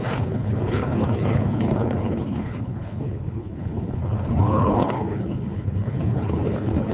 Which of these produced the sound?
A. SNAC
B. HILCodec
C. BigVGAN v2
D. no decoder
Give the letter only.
B